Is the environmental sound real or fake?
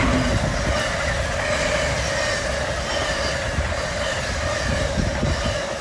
real